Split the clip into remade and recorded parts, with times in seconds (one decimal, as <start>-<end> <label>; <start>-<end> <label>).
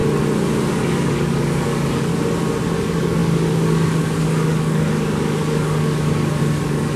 0.0-0.7 recorded; 0.7-2.1 remade; 2.1-2.8 recorded; 2.8-7.0 remade